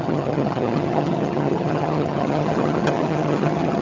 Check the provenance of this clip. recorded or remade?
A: remade